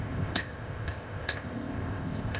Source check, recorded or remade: remade